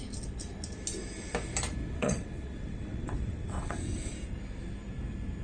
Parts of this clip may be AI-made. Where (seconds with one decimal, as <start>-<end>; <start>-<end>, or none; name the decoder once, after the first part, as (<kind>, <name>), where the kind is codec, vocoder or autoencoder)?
1.8-4.1 (vocoder, WaveNeXt)